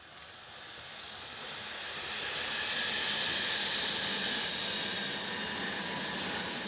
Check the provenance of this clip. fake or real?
real